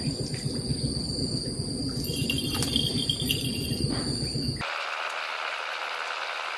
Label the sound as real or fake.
real